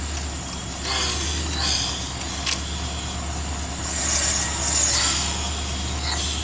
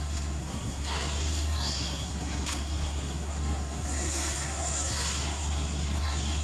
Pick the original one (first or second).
first